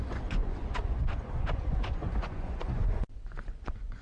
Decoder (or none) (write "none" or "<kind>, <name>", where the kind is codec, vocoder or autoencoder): vocoder, Vocos